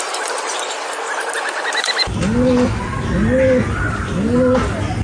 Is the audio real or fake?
real